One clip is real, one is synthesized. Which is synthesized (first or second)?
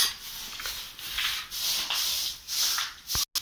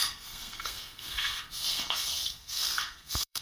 second